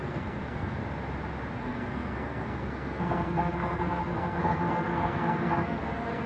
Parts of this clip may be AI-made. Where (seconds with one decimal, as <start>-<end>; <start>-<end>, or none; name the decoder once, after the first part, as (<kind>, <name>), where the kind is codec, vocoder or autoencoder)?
0.0-0.8 (codec, SNAC); 1.6-6.3